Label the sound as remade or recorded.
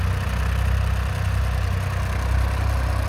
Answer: recorded